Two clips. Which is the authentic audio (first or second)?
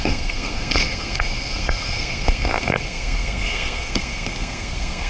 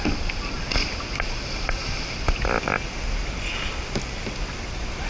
second